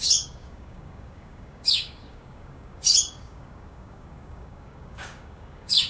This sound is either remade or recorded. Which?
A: remade